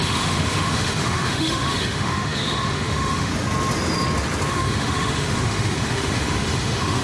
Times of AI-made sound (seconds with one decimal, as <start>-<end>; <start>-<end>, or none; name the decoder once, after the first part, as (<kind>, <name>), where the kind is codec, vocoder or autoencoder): 0.0-3.3 (autoencoder, DAC-VAE); 4.5-7.0